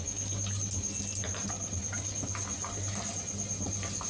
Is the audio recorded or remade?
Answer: recorded